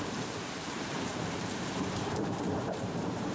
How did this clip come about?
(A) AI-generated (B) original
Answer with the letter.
A